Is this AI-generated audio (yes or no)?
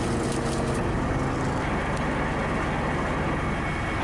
no